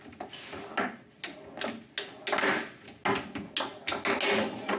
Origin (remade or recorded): recorded